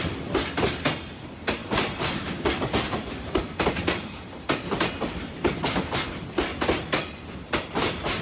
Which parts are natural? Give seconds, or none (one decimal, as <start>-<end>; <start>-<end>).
0.0-1.6; 4.9-8.2